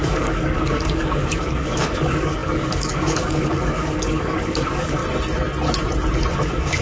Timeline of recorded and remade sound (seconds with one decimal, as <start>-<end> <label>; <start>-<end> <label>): 0.0-5.0 remade; 5.0-6.3 recorded; 6.3-6.8 remade